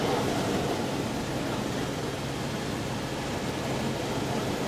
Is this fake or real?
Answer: real